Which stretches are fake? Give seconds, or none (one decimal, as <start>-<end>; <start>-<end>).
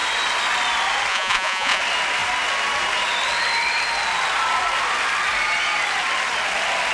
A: 1.1-1.8